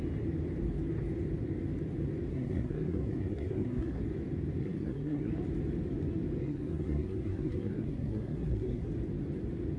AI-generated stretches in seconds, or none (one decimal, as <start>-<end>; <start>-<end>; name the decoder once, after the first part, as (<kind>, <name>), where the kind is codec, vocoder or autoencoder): 2.3-4.0 (codec, SNAC); 4.6-5.3; 6.4-8.9